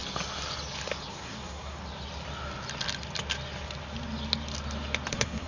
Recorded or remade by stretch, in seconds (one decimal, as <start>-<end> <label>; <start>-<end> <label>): 0.0-1.1 recorded; 1.1-1.8 remade; 1.8-5.1 recorded; 5.1-5.5 remade